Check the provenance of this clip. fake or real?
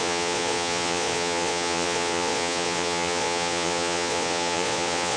fake